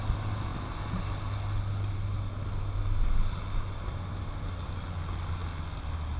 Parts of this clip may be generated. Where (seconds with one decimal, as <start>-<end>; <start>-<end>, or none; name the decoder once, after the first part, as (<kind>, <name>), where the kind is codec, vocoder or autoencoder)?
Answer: none